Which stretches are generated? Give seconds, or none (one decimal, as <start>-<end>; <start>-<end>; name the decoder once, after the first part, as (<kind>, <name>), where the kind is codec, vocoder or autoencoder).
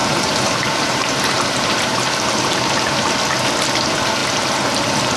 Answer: 0.0-3.1 (vocoder, BigVGAN v2)